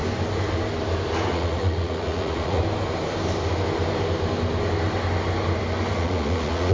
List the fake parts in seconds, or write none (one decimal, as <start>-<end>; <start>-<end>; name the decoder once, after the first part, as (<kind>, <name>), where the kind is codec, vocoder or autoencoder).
1.3-2.6 (vocoder, Vocos); 5.9-6.7